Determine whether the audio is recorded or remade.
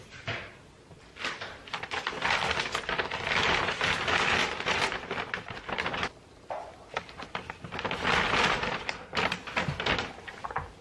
recorded